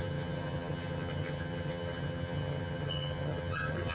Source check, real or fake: fake